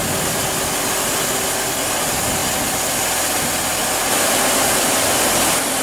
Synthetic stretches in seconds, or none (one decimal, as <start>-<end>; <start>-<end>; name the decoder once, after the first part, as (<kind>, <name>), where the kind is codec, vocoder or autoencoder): none